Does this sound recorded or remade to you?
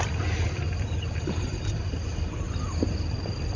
recorded